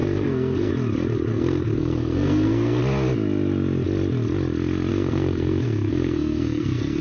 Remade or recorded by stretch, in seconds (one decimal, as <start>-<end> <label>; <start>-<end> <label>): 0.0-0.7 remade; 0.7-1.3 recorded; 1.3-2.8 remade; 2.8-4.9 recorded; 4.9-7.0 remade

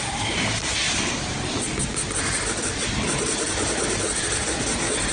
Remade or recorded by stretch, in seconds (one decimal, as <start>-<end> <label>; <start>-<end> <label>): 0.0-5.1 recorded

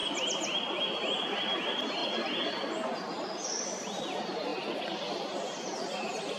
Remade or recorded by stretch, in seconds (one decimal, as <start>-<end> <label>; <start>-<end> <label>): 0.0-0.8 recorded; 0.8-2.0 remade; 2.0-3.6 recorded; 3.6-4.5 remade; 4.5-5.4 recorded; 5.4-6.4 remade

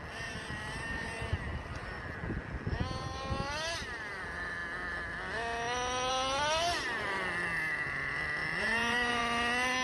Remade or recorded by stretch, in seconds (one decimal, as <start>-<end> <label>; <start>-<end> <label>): 0.0-8.4 recorded; 8.4-9.2 remade; 9.2-9.8 recorded